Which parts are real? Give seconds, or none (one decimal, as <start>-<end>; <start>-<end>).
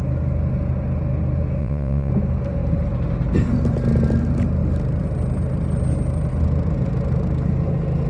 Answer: 0.0-1.6; 2.1-8.1